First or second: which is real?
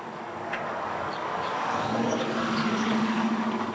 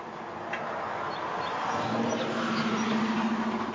second